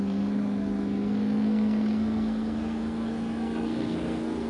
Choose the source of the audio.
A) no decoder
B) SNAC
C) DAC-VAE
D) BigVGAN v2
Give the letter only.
B